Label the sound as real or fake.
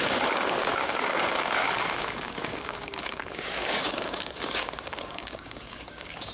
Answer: fake